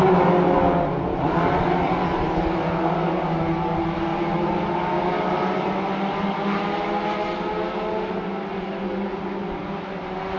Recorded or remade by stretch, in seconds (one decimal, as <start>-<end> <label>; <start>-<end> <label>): 0.0-10.4 recorded